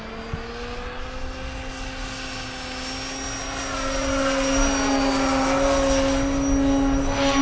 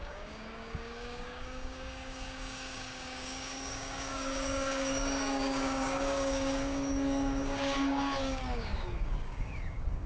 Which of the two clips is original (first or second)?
first